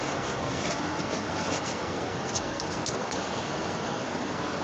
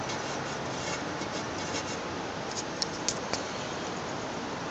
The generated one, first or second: first